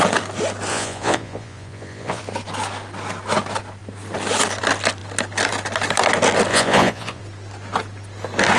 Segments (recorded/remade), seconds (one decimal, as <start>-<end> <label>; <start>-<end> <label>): 0.0-0.7 recorded; 0.7-2.2 remade; 2.2-6.5 recorded; 6.5-7.2 remade; 7.2-8.6 recorded